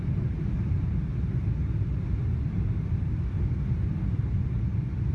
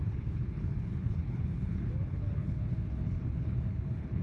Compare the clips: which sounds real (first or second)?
first